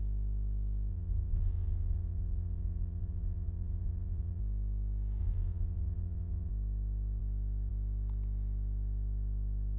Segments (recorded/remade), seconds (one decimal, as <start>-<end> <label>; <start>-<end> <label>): 0.0-0.9 recorded; 0.9-4.4 remade; 4.4-5.2 recorded; 5.2-6.5 remade; 6.5-9.8 recorded